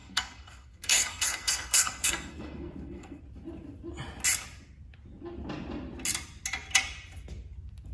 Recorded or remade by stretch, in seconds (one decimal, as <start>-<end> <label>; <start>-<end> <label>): 0.0-3.2 remade; 3.2-7.9 recorded